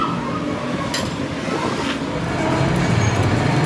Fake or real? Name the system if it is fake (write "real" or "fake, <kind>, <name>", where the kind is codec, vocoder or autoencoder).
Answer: real